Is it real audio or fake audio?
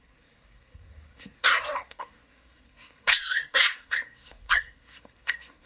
fake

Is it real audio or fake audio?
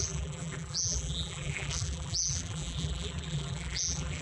fake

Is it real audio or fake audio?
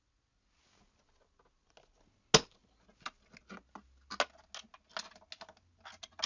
real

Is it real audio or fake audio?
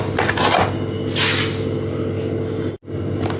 real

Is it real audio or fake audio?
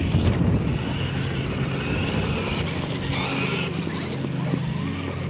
real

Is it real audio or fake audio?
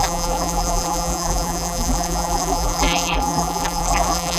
fake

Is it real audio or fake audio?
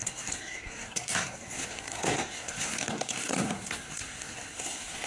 fake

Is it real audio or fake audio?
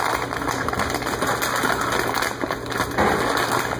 real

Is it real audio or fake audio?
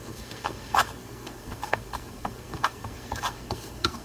fake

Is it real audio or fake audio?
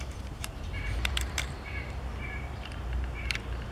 fake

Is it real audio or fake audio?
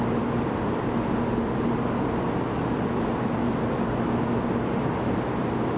real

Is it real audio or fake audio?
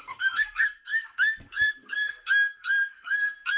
fake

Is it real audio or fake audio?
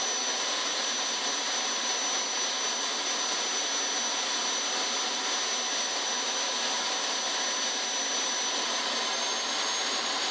real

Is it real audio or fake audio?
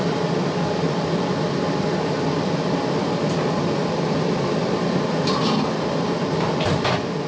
real